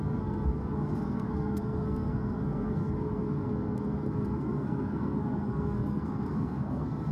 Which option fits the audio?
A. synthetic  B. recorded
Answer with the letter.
A